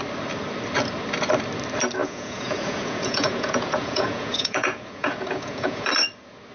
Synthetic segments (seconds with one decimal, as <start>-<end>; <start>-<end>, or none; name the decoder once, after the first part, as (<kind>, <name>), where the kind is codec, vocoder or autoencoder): 2.0-5.9 (vocoder, Vocos)